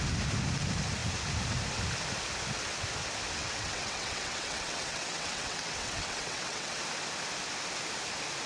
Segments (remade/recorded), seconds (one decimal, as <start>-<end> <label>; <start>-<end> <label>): 0.0-3.4 recorded; 3.4-6.8 remade; 6.8-8.5 recorded